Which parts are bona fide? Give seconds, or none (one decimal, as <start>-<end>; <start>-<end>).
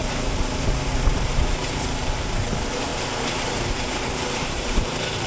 0.0-0.9